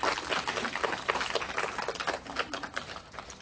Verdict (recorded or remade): recorded